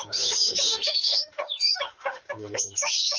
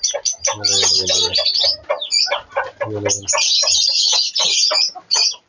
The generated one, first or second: first